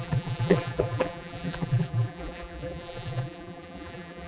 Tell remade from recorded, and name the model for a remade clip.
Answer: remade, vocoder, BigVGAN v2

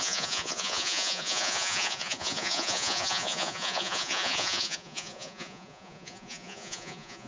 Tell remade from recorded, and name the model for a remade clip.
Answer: remade, vocoder, Vocos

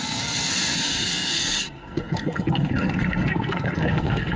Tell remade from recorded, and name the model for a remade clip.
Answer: remade, codec, SNAC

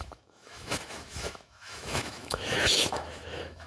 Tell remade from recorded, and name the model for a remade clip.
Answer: remade, autoencoder, DAC-VAE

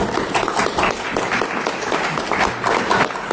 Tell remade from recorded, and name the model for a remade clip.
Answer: recorded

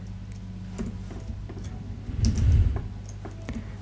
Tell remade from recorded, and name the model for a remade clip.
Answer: recorded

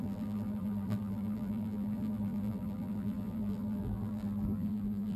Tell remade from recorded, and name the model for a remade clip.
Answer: remade, vocoder, BigVGAN v2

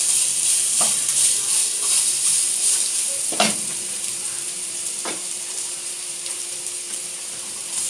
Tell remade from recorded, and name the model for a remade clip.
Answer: remade, vocoder, BigVGAN v2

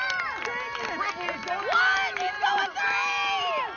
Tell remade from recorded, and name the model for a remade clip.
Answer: recorded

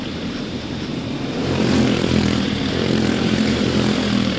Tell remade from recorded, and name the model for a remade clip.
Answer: remade, vocoder, BigVGAN v2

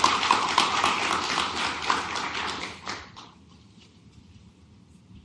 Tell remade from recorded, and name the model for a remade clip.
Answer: recorded